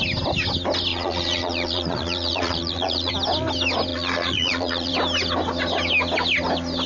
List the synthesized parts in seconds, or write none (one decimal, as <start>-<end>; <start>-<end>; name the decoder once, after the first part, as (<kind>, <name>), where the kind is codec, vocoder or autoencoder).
0.9-3.1 (vocoder, Vocos); 3.9-4.9